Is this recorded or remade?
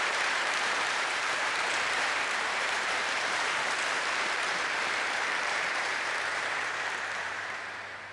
remade